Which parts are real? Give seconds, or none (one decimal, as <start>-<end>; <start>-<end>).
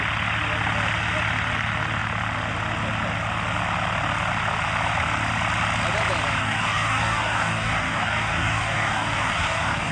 0.0-6.4